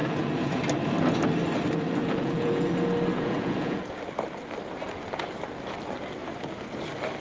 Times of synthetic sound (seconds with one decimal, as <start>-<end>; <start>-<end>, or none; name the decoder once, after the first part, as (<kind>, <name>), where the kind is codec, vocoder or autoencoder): 0.0-0.6 (vocoder, Vocos); 2.0-2.7; 3.1-4.0